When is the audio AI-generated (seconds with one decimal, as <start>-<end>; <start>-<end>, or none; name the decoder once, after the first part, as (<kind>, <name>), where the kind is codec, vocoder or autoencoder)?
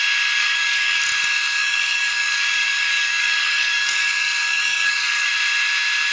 0.4-1.0 (codec, DAC); 1.6-5.3